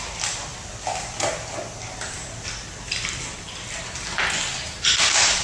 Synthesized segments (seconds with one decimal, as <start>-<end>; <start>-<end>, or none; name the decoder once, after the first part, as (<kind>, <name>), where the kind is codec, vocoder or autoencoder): none